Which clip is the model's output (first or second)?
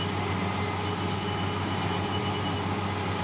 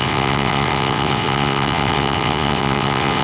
second